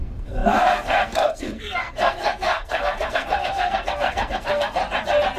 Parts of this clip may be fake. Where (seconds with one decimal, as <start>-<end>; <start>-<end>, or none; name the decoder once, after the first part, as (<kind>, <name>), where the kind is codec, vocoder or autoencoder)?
0.0-4.8 (codec, SNAC)